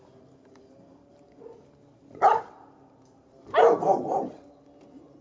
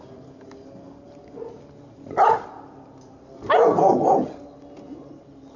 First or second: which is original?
second